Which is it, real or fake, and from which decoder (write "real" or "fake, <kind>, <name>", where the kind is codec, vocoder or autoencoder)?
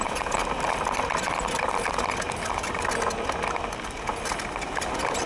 real